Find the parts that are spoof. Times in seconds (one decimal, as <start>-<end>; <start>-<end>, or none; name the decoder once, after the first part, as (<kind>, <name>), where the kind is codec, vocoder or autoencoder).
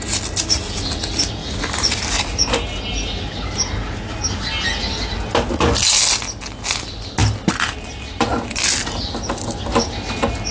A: none